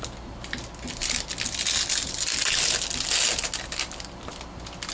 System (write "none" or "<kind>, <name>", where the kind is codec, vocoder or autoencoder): none